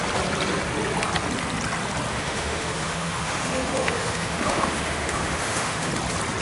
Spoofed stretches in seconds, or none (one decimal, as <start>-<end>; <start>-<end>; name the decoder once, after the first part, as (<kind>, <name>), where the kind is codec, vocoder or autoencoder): 2.1-5.9 (autoencoder, DAC-VAE)